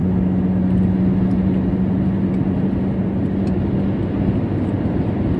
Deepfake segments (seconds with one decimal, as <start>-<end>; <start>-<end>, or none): none